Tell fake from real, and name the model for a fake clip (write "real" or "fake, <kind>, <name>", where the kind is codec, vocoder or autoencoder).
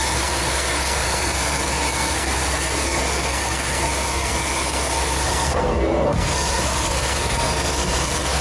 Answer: fake, codec, SNAC